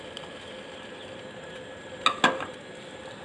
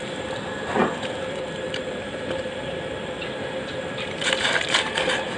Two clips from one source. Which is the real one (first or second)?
first